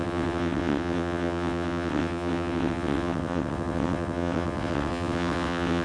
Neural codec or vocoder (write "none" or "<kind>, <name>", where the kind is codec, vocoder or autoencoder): vocoder, WaveNeXt